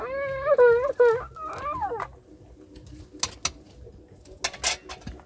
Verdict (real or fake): real